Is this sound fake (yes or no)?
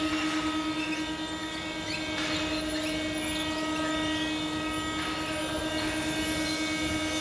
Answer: no